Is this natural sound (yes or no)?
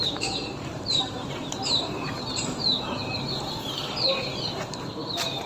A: no